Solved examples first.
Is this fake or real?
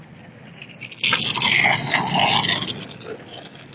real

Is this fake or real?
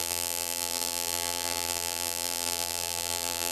fake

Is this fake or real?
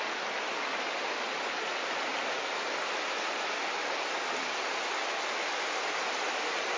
real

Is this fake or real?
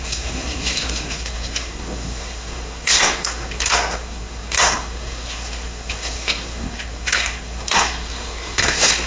fake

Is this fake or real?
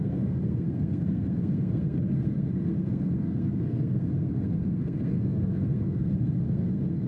fake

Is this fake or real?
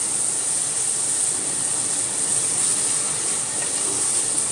real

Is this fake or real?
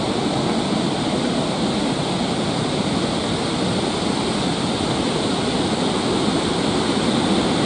real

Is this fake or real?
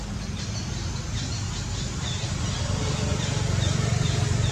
real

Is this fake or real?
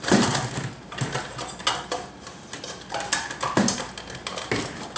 real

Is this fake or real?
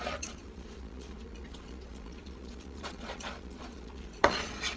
fake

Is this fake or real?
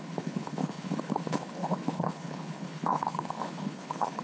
fake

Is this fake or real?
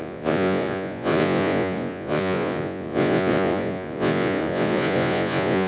fake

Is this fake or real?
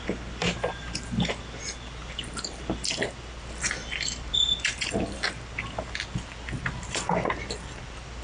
fake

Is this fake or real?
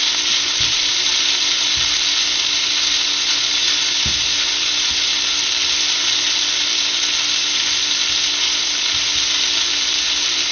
real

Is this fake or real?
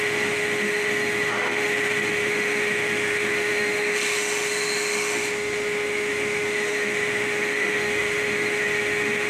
fake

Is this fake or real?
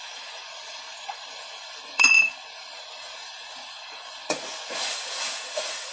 fake